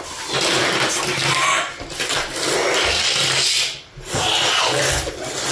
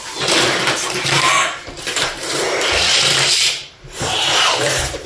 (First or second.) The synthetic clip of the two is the second